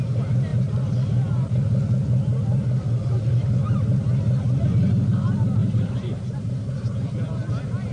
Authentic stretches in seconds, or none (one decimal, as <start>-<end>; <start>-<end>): 0.0-5.6; 7.5-7.9